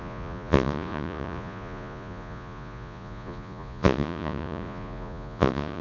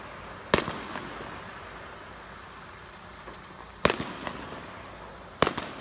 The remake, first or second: first